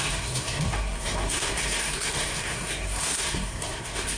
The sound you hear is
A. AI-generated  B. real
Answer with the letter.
A